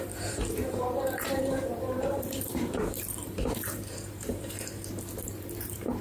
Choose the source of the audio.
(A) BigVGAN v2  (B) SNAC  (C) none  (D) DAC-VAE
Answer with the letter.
A